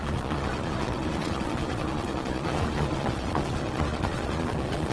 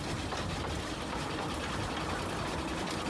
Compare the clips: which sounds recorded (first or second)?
second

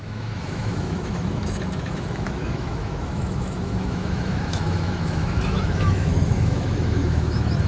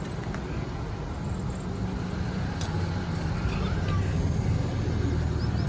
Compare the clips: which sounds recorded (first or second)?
second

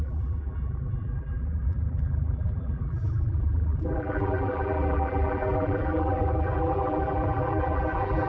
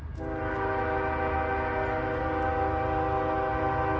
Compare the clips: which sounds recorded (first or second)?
second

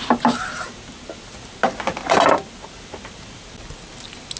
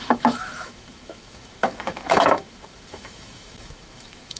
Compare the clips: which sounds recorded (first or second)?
first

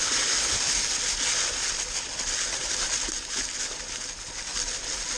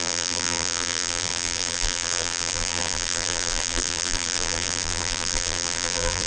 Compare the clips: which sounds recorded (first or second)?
first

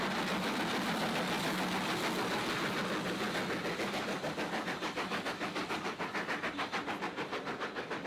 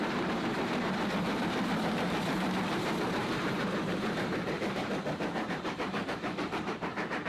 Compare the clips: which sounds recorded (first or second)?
first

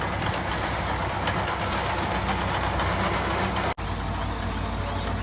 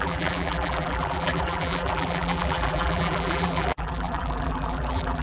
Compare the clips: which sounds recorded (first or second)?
first